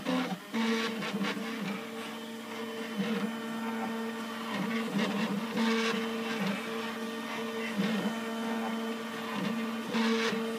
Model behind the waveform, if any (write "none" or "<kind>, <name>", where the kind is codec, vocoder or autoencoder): none